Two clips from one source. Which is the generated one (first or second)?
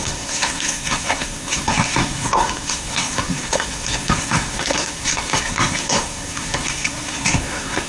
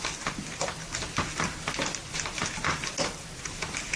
first